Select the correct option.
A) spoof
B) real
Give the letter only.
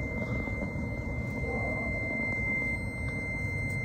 B